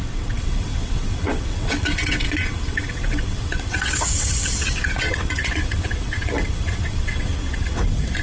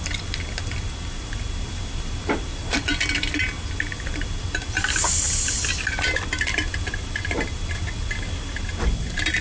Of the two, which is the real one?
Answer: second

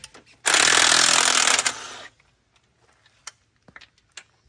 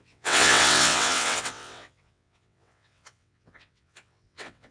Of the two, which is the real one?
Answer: first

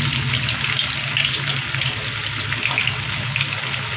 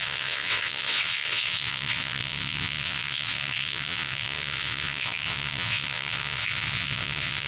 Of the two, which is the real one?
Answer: first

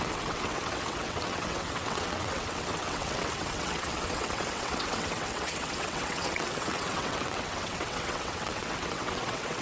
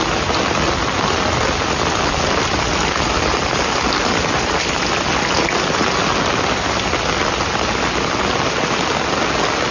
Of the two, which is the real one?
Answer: second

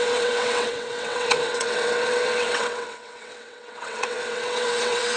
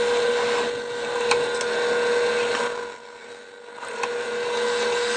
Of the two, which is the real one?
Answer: second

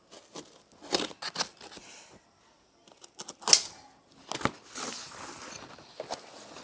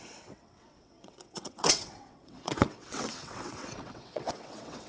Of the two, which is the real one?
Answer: first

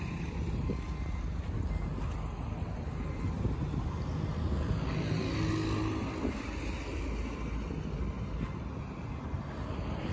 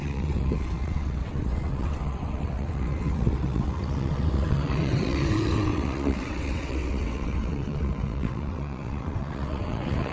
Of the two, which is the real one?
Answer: first